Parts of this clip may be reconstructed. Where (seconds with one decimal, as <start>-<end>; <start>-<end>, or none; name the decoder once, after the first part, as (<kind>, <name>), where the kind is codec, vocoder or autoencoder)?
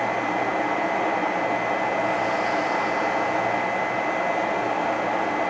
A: none